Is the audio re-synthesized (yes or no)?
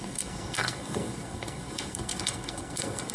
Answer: yes